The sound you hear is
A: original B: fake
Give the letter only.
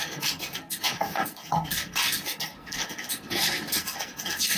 B